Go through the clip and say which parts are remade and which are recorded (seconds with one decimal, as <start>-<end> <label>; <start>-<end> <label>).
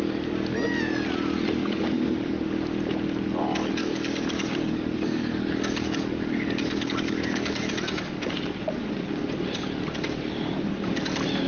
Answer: 0.0-1.6 recorded; 1.6-2.4 remade; 2.4-3.8 recorded; 3.8-7.7 remade; 7.7-11.5 recorded